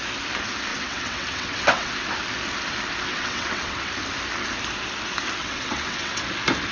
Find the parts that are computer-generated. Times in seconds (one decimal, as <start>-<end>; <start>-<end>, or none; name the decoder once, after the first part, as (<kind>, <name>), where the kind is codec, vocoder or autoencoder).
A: 0.7-1.9 (vocoder, WaveNeXt); 3.1-3.9; 5.4-6.2